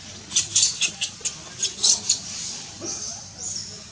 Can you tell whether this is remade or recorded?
recorded